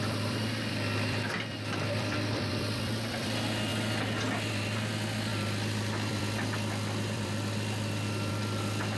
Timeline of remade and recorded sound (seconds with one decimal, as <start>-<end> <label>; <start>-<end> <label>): 0.0-3.7 remade; 3.7-4.5 recorded; 4.5-9.0 remade